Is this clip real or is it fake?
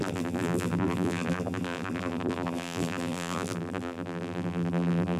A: fake